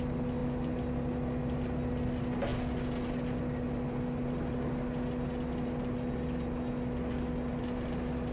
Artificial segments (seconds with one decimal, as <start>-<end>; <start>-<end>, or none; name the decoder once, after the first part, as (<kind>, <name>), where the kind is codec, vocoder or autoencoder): none